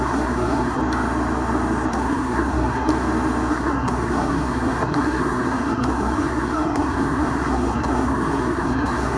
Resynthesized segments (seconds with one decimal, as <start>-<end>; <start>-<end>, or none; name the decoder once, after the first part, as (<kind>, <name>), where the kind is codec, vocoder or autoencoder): 0.0-0.8 (codec, SNAC); 1.9-2.9; 3.5-9.2